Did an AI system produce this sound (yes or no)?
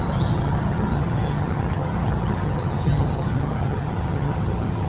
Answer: yes